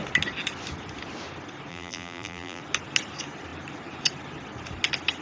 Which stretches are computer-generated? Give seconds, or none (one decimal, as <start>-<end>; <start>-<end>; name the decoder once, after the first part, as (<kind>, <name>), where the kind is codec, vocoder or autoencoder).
1.7-2.6 (vocoder, BigVGAN v2)

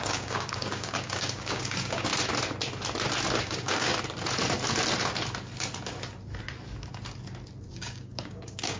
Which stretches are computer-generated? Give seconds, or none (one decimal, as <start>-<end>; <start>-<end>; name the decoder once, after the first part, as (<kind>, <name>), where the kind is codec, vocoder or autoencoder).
0.0-2.1 (codec, DAC); 3.4-3.9; 7.7-8.8